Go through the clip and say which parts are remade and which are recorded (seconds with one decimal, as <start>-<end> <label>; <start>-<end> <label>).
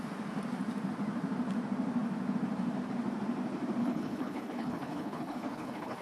0.0-3.8 recorded; 3.8-6.0 remade